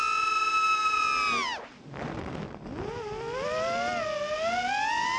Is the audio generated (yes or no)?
no